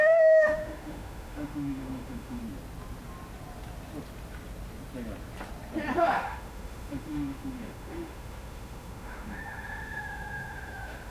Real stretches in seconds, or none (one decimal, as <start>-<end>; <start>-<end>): 2.4-6.0